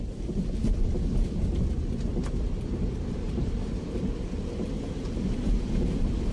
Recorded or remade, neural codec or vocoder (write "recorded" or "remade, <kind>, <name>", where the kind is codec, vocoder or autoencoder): remade, vocoder, BigVGAN v2